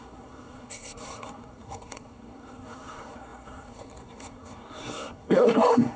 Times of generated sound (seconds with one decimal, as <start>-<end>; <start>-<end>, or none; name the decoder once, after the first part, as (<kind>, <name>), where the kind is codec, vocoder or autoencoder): 0.0-6.0 (codec, SNAC)